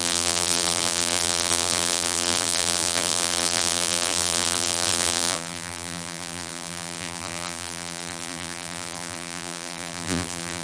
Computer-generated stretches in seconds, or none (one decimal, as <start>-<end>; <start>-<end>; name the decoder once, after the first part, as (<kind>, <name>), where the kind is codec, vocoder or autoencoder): 0.0-10.6 (vocoder, BigVGAN v2)